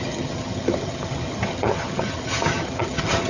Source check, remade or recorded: remade